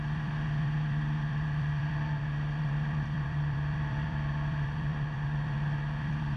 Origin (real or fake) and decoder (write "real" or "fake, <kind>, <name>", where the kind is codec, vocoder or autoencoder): fake, vocoder, BigVGAN v2